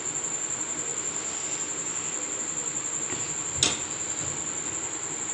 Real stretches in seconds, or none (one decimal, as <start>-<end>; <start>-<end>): 0.0-5.3